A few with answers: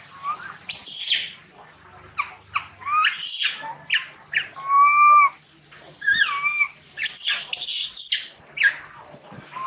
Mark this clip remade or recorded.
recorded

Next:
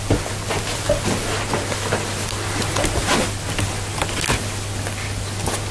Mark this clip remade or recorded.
recorded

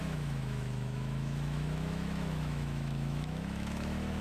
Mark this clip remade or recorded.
remade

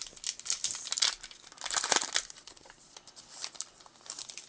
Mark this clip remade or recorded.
remade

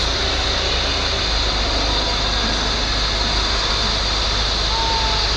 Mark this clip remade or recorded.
recorded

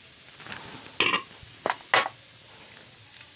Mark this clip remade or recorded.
recorded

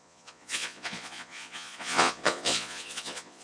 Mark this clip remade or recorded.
remade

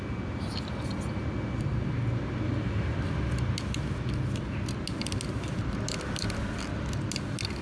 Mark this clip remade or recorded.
recorded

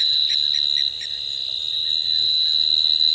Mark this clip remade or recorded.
recorded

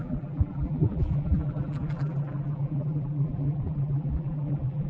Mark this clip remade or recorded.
remade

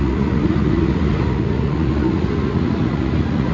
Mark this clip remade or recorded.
remade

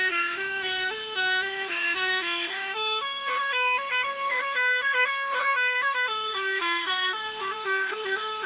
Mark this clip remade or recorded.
remade